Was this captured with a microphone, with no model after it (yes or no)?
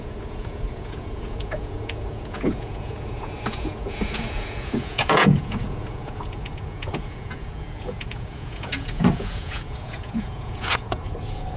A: no